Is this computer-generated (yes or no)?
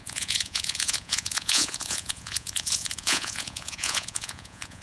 yes